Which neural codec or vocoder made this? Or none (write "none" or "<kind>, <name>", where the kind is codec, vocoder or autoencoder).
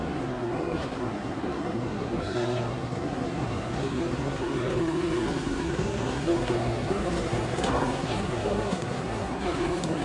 codec, SNAC